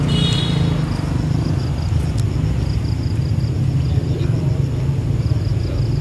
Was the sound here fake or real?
real